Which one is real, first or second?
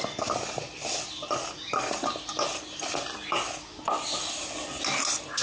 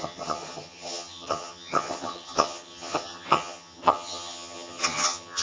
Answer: first